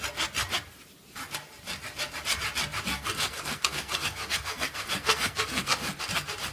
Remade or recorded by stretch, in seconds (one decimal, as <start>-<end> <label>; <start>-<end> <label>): 0.0-2.9 recorded; 2.9-6.0 remade; 6.0-6.5 recorded

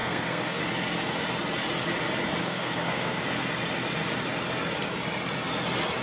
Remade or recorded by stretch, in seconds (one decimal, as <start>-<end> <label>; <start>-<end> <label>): 0.0-0.6 remade; 0.6-2.4 recorded; 2.4-3.2 remade; 3.2-6.0 recorded

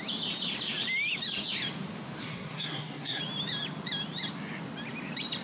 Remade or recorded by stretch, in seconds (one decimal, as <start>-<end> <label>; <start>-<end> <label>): 0.0-2.2 recorded; 2.2-3.2 remade; 3.2-5.4 recorded

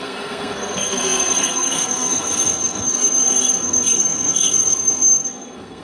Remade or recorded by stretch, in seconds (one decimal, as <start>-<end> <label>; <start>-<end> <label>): 0.0-5.8 remade

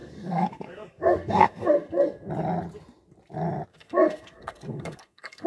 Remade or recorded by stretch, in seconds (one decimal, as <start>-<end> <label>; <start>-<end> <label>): 0.0-2.3 remade; 2.3-3.7 recorded; 3.7-5.5 remade

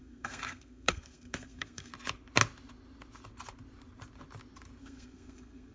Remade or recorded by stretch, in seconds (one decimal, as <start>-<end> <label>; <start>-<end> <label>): 0.0-1.9 remade; 1.9-4.8 recorded; 4.8-5.7 remade

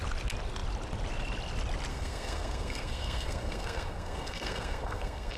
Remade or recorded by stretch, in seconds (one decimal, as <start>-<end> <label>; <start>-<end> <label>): 0.0-1.9 recorded; 1.9-5.4 remade

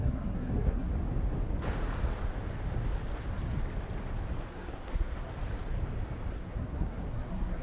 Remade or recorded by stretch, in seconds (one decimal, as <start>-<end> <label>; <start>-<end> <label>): 0.0-0.9 remade; 0.9-4.5 recorded; 4.5-5.3 remade; 5.3-6.3 recorded; 6.3-7.6 remade